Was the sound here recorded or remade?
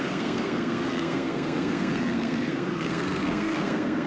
remade